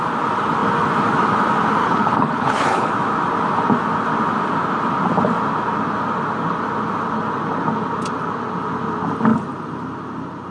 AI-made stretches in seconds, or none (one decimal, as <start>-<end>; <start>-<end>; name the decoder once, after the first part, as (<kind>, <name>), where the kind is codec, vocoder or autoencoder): 1.8-2.9 (codec, HILCodec)